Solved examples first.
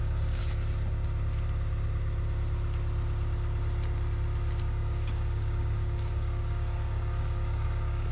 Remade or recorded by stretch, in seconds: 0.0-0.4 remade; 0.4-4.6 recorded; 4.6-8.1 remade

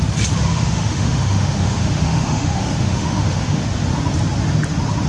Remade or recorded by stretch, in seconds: 0.0-0.5 recorded; 0.5-3.6 remade; 3.6-5.1 recorded

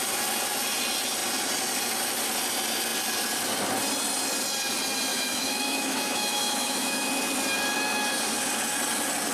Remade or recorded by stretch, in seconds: 0.0-5.1 recorded; 5.1-7.1 remade; 7.1-9.3 recorded

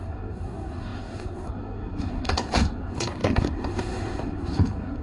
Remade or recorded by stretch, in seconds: 0.0-5.0 remade